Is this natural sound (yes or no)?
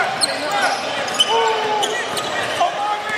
yes